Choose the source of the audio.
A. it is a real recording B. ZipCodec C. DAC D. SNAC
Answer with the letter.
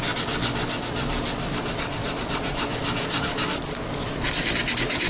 A